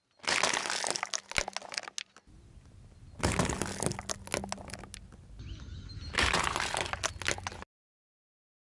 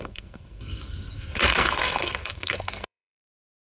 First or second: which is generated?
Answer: second